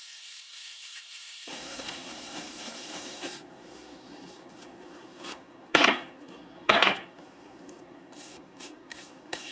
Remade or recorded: remade